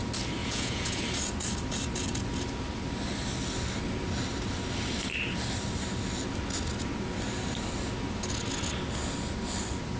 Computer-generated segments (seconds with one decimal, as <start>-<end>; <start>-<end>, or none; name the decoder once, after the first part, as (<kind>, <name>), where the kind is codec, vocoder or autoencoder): 0.4-1.0 (vocoder, Vocos)